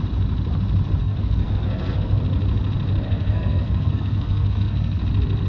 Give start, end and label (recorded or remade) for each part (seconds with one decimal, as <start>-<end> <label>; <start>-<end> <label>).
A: 0.0-1.0 recorded; 1.0-2.2 remade; 2.2-3.1 recorded; 3.1-5.0 remade; 5.0-5.5 recorded